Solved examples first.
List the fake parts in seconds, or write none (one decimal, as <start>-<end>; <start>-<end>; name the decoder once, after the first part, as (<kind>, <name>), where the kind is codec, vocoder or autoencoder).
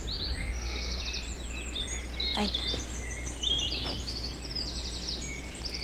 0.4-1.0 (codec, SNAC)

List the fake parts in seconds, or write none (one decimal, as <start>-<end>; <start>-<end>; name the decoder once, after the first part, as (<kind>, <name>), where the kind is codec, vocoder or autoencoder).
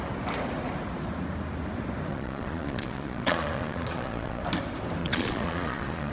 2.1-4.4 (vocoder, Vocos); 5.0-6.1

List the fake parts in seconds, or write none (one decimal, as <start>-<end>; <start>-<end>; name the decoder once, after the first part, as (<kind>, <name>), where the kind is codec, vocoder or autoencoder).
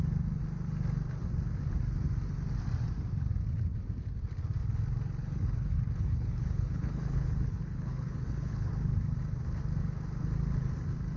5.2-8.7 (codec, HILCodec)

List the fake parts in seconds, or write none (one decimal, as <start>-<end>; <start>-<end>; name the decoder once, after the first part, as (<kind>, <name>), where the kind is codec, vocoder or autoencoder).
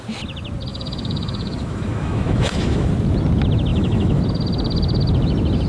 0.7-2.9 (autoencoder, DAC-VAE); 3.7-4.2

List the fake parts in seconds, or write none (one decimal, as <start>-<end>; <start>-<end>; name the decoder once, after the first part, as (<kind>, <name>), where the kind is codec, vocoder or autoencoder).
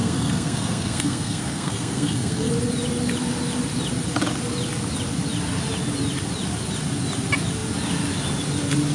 0.0-2.5 (codec, SNAC)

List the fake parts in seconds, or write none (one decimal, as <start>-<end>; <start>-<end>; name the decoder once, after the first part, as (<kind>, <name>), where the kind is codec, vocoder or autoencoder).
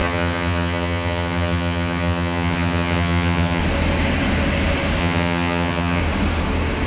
0.0-3.6 (vocoder, HiFi-GAN); 5.0-6.0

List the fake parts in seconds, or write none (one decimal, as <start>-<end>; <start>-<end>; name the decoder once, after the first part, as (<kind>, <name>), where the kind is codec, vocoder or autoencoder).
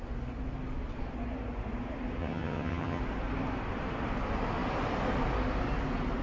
2.2-3.0 (vocoder, HiFi-GAN)